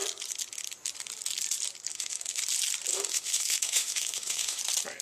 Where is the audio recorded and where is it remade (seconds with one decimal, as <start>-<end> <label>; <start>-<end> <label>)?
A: 0.0-1.9 recorded; 1.9-2.4 remade; 2.4-2.9 recorded; 2.9-4.6 remade; 4.6-5.0 recorded